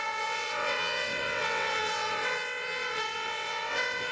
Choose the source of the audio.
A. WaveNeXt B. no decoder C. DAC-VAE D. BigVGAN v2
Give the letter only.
A